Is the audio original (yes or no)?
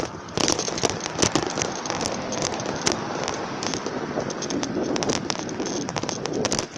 no